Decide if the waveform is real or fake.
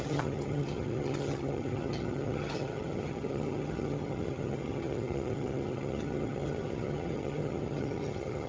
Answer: fake